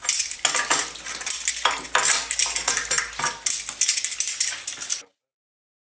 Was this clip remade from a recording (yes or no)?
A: no